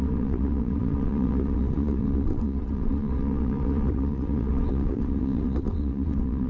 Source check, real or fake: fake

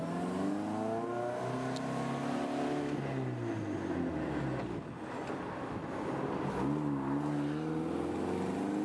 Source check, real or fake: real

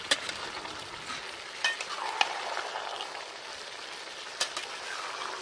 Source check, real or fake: real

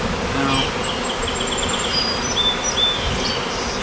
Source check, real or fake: real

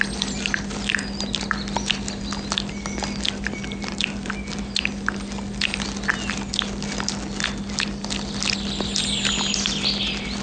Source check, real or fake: real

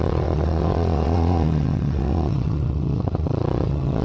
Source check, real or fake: fake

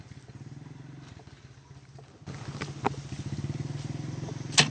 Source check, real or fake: real